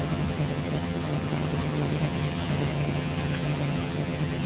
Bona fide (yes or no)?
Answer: no